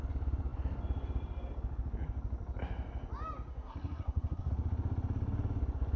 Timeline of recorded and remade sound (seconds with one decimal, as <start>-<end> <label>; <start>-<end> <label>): 0.0-3.5 recorded; 3.5-4.5 remade; 4.5-6.0 recorded